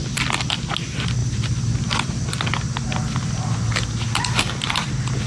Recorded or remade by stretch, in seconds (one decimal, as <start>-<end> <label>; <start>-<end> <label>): 0.0-5.3 recorded